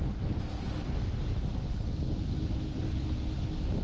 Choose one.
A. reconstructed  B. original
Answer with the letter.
B